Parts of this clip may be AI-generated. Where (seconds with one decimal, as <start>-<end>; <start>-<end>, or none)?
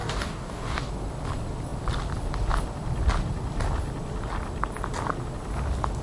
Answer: 0.0-0.9